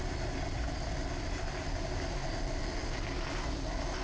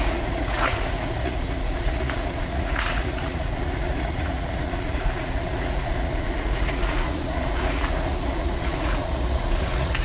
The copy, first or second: second